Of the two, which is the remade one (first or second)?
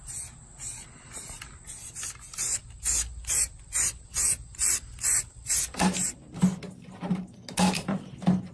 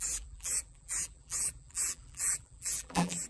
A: second